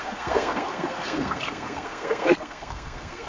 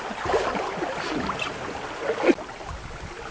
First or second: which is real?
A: second